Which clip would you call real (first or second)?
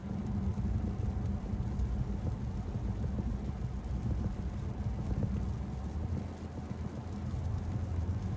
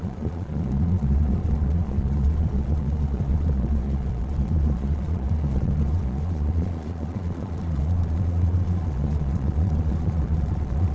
first